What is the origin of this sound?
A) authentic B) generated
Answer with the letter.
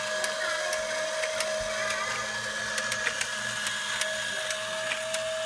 A